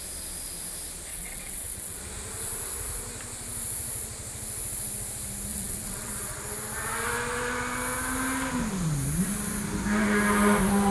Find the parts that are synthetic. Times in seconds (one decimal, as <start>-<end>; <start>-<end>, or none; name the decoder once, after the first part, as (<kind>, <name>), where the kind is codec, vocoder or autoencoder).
1.1-2.0 (vocoder, WaveNeXt); 5.5-6.1

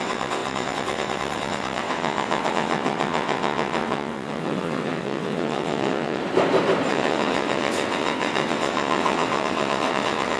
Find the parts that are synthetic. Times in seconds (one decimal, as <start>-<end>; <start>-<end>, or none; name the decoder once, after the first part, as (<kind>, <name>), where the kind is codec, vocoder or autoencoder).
0.0-6.2 (vocoder, WaveNeXt); 6.9-10.4

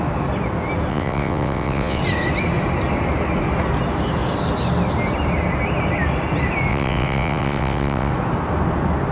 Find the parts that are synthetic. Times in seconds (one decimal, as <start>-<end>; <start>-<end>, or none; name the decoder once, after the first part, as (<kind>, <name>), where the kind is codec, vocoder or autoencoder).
0.9-2.0 (vocoder, WaveNeXt); 6.7-8.1

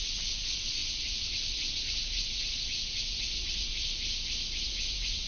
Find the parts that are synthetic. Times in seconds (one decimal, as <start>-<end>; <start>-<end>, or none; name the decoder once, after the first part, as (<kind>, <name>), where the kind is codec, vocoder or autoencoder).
0.0-3.7 (vocoder, WaveNeXt); 4.6-5.3